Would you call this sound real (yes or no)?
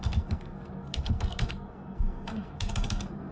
no